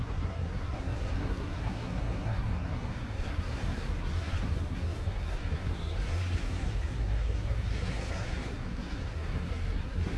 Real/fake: fake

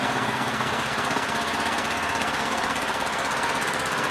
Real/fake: fake